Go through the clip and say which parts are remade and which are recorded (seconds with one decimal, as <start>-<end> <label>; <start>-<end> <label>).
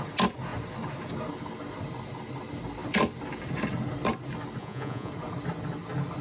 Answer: 0.0-4.6 recorded; 4.6-5.1 remade; 5.1-6.2 recorded